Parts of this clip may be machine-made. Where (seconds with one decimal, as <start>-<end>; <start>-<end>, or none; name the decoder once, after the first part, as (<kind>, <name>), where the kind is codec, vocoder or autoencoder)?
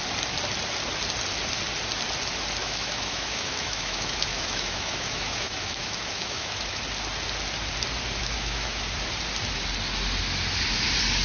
2.6-6.8 (autoencoder, DAC-VAE); 8.2-8.8